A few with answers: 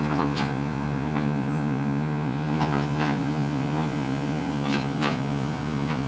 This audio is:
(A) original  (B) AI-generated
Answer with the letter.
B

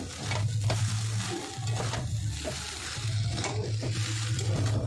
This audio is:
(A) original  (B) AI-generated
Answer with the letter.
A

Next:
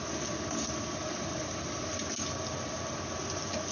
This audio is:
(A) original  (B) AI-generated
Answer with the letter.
A